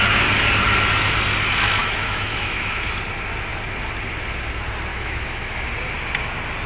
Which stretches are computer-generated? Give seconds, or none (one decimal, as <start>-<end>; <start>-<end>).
1.8-2.9; 4.9-5.7